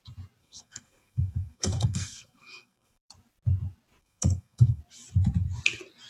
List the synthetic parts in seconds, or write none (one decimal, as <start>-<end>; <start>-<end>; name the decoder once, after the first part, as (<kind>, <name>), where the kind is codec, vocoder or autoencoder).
0.4-3.1 (codec, SNAC); 4.0-4.8